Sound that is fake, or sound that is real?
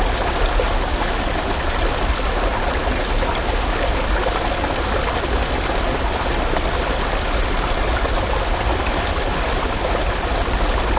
real